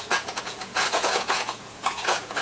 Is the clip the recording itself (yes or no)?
no